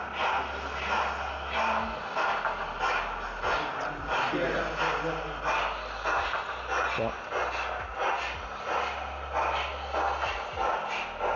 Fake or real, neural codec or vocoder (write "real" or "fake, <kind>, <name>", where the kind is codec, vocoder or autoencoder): real